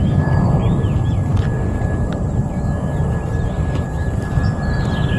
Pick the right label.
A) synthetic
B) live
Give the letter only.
A